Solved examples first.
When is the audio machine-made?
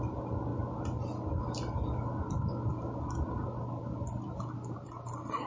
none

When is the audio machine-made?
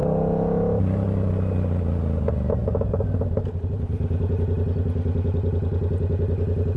none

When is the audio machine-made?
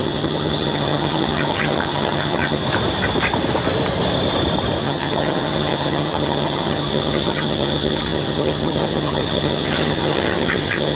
0.0-2.6 (vocoder, HiFi-GAN); 4.8-11.0